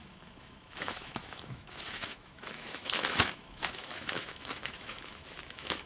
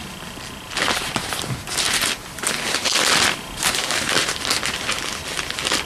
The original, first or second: second